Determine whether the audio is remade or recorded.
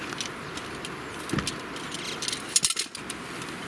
recorded